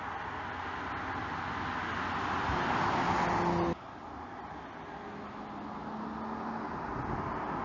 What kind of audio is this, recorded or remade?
recorded